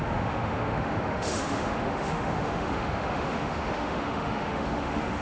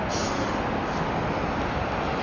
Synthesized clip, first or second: first